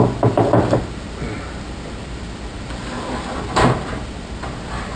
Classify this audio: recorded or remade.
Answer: recorded